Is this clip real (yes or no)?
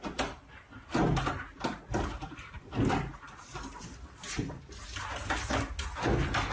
yes